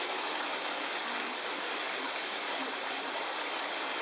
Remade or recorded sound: remade